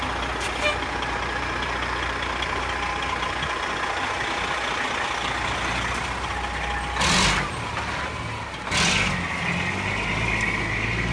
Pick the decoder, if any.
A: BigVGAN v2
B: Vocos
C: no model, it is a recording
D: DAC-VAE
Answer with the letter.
C